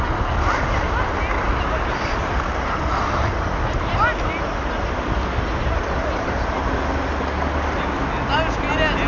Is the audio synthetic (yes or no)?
no